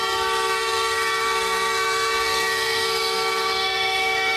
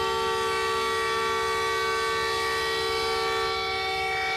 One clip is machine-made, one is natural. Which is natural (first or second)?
second